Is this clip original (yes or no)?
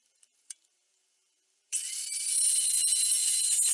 no